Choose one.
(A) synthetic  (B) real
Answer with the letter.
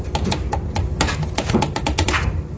B